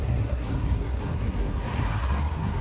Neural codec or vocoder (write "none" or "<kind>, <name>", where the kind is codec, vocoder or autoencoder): codec, SNAC